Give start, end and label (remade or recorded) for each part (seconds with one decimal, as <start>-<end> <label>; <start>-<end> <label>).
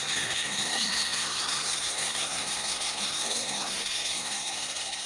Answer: 0.0-5.1 remade